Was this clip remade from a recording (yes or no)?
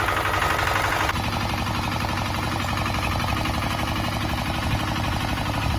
no